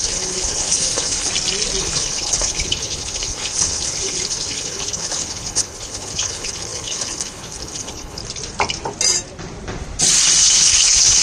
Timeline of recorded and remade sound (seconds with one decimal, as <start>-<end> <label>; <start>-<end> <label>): 0.0-1.3 remade; 1.3-1.8 recorded; 1.8-8.2 remade; 8.2-10.4 recorded; 10.4-11.2 remade